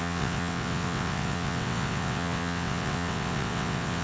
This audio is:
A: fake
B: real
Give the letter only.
A